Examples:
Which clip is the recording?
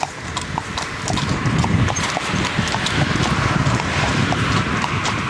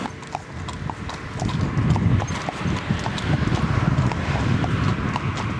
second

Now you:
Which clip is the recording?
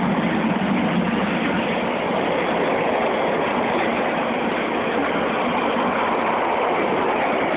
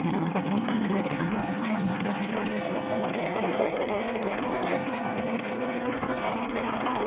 first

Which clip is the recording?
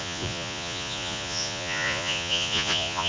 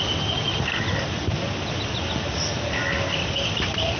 second